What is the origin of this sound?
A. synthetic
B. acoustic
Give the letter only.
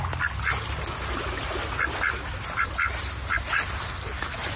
B